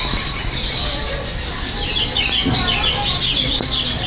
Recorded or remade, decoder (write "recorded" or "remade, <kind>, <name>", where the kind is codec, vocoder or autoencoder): recorded